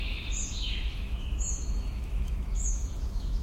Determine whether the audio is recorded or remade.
remade